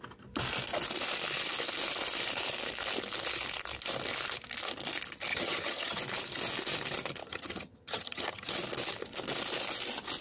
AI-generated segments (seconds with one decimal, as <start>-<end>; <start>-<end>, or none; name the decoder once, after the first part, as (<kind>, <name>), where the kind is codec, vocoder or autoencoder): 5.3-6.0 (vocoder, HiFi-GAN); 7.2-8.5